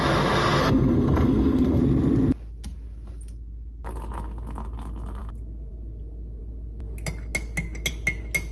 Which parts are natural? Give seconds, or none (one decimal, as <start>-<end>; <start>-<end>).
0.0-0.6; 1.8-8.5